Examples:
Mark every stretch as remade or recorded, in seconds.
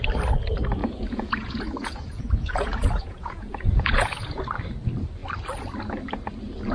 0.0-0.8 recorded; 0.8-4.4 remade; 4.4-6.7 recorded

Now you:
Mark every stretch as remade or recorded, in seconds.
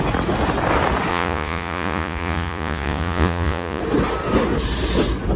0.0-1.1 recorded; 1.1-3.8 remade; 3.8-5.4 recorded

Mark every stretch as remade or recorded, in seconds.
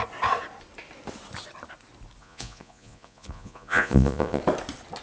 0.0-2.2 recorded; 2.2-4.4 remade; 4.4-5.0 recorded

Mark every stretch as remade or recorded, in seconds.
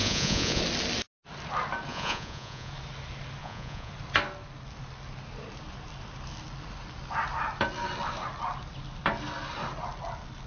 0.0-0.6 remade; 0.6-1.9 recorded; 1.9-2.7 remade; 2.7-3.4 recorded; 3.4-3.9 remade; 3.9-10.5 recorded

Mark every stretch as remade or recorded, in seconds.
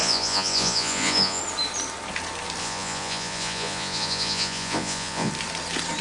0.0-1.4 remade; 1.4-2.6 recorded; 2.6-5.3 remade; 5.3-6.0 recorded